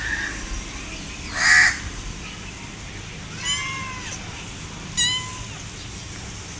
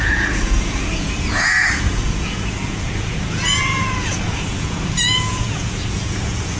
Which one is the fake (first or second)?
second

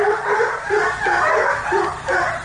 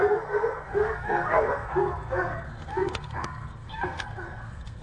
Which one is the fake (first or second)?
second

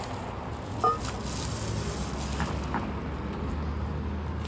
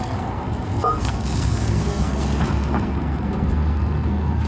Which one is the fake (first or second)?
second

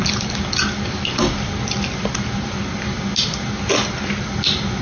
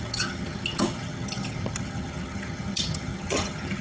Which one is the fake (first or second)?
second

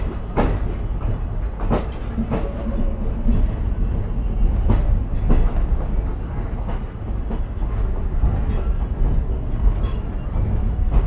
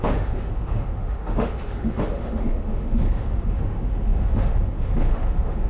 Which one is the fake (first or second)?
second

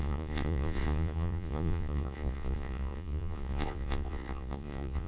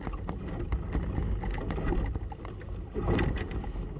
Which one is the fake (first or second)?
first